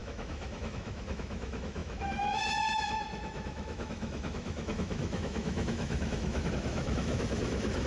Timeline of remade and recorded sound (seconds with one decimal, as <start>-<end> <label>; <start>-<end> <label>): 0.0-7.9 remade